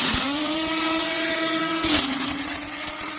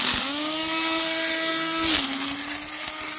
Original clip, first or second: second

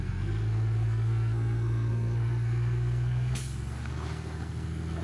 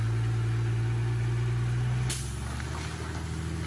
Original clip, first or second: second